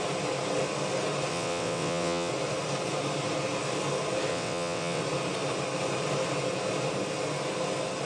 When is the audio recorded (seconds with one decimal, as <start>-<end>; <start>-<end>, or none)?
0.0-1.3; 2.3-4.3; 5.0-8.1